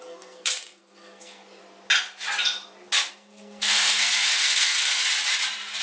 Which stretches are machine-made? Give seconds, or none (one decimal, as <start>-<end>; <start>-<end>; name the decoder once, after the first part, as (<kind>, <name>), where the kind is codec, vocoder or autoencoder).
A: 0.0-1.6 (codec, SNAC); 3.1-5.0